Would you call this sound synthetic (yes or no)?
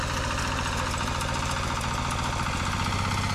no